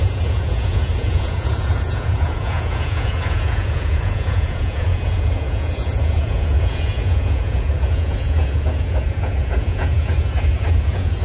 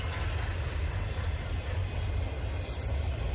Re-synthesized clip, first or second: first